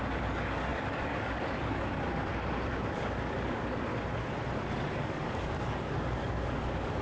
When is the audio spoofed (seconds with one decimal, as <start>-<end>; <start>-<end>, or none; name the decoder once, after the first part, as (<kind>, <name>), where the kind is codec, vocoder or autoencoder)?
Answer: 0.0-3.9 (codec, DAC); 4.9-7.0